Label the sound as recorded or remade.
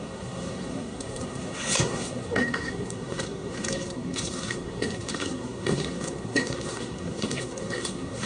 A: remade